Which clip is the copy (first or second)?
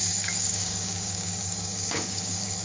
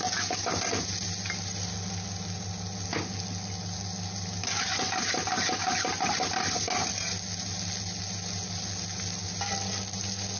first